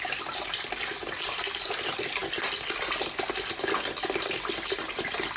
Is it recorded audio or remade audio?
recorded